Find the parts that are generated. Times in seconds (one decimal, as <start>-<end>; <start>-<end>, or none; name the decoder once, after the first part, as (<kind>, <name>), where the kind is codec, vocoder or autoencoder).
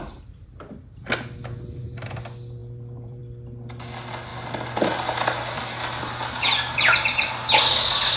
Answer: 2.6-3.2 (vocoder, BigVGAN v2)